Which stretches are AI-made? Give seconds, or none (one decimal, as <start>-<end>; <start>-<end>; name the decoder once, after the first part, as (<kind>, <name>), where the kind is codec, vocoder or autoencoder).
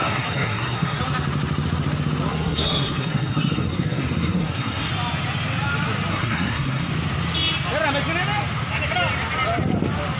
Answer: 0.0-1.0 (codec, SNAC); 2.3-4.9; 6.1-6.9